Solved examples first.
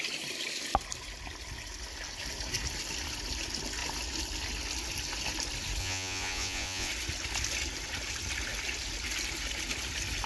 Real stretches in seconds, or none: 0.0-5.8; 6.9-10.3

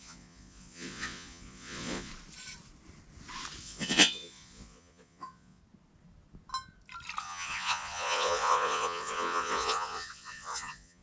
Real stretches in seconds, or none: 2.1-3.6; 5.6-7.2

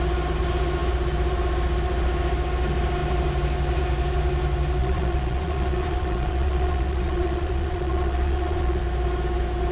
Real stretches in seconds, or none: 0.0-4.8; 8.8-9.7

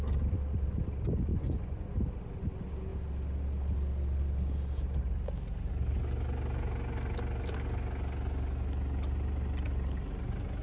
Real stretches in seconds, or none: 0.0-1.3; 1.9-10.6

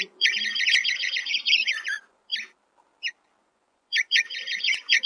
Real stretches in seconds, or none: 2.3-3.4

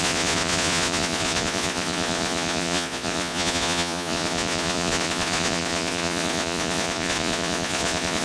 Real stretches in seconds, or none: none

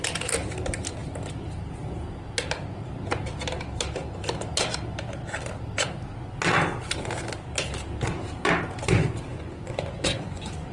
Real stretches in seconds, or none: 0.0-9.3

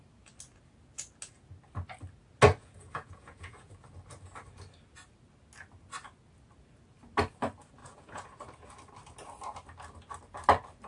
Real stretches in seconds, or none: 0.0-2.6; 3.7-7.8; 8.4-10.9